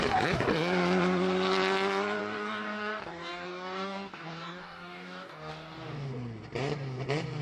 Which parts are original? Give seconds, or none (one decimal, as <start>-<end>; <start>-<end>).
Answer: 0.0-2.2; 5.5-7.4